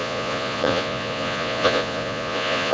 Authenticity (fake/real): fake